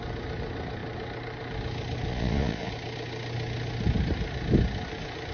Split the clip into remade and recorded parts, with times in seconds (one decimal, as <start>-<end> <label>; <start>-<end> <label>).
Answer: 0.0-2.1 recorded; 2.1-2.7 remade; 2.7-5.3 recorded